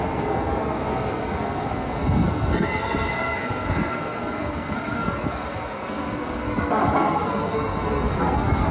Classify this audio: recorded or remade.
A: remade